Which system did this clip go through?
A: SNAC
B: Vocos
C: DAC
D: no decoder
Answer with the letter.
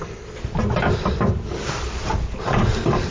D